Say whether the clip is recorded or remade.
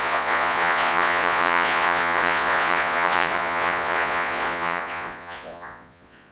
remade